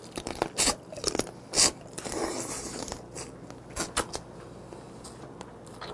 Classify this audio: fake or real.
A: real